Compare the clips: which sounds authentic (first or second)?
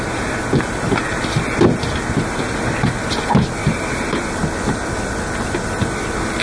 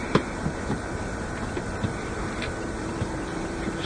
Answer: first